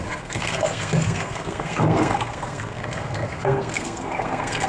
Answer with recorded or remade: remade